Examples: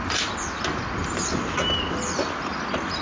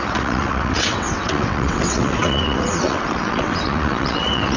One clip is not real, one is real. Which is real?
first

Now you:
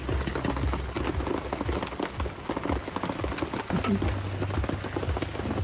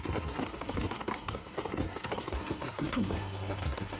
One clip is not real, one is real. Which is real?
first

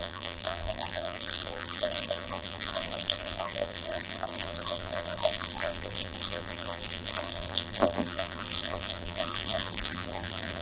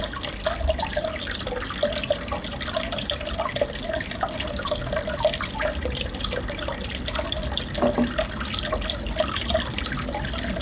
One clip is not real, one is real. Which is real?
second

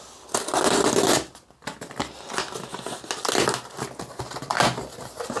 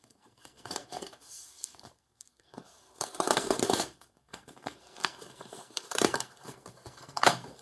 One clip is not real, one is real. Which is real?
first